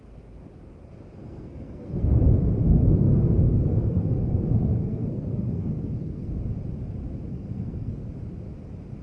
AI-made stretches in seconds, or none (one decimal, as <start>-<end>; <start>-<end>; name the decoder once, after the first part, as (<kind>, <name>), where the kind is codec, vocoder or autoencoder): 1.2-2.2 (codec, SNAC); 2.6-6.3; 7.3-8.1